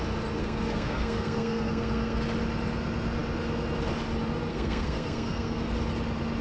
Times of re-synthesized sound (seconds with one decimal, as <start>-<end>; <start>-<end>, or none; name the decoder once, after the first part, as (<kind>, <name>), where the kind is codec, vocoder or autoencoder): 0.4-2.2 (codec, SNAC); 4.5-5.7